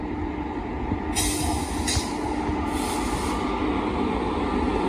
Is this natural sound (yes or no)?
yes